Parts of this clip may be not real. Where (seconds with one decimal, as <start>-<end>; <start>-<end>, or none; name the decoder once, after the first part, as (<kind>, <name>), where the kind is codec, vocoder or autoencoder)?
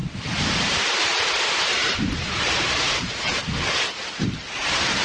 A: 0.0-3.4 (vocoder, BigVGAN v2); 4.2-5.0